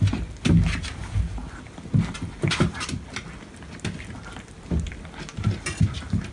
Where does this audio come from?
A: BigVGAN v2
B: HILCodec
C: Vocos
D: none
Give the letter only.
D